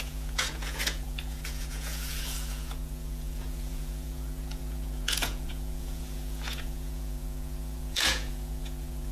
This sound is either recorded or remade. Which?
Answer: remade